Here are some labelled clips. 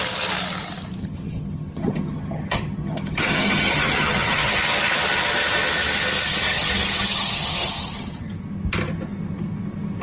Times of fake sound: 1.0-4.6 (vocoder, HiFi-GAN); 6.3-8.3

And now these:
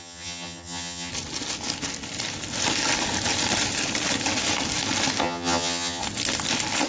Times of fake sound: 0.0-1.1 (vocoder, HiFi-GAN); 5.2-6.0

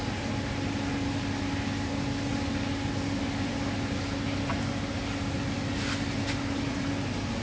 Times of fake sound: none

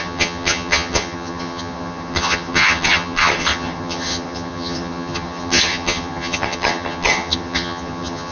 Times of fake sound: 0.0-8.3 (vocoder, HiFi-GAN)